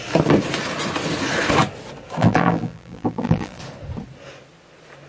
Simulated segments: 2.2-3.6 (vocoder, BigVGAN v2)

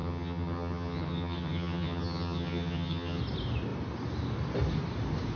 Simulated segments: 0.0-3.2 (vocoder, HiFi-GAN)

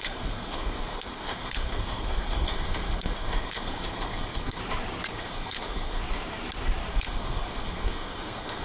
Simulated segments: 0.0-4.6 (codec, SNAC); 5.1-6.0; 6.9-8.6

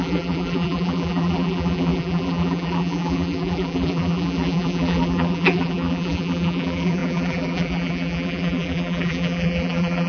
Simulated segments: 0.0-10.1 (vocoder, BigVGAN v2)

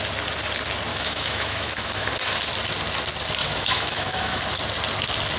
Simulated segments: 0.9-2.1 (autoencoder, DAC-VAE); 3.4-4.4